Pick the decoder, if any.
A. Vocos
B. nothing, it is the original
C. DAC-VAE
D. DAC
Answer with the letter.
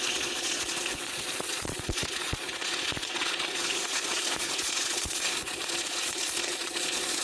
A